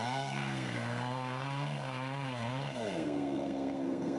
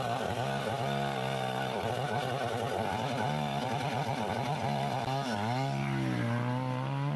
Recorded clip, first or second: second